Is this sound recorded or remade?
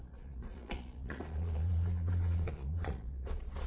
remade